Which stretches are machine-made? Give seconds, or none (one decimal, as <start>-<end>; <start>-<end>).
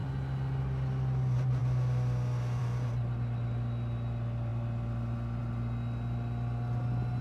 none